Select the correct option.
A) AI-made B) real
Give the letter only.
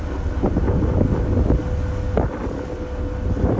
B